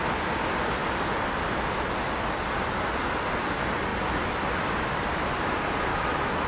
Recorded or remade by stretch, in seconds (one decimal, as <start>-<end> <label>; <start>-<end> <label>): 0.0-5.9 recorded; 5.9-6.5 remade